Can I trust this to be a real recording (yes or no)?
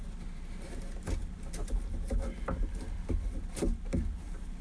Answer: yes